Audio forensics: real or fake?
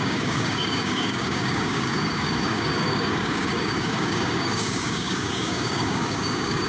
fake